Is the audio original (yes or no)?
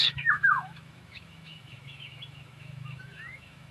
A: no